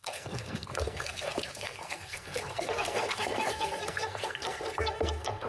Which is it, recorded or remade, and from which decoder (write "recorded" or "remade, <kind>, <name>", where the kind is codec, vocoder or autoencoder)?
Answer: remade, codec, SNAC